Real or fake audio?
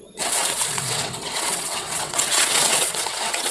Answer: fake